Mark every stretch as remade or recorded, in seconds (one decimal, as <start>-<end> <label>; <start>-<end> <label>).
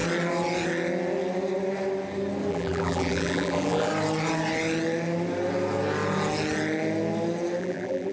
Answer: 0.0-2.5 recorded; 2.5-3.9 remade; 3.9-7.6 recorded; 7.6-8.1 remade